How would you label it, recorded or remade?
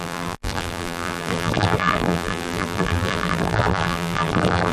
remade